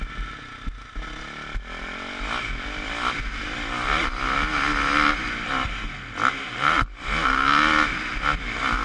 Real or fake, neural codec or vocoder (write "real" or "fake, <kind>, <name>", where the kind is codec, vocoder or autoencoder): real